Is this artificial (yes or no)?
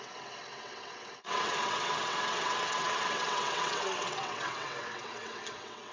yes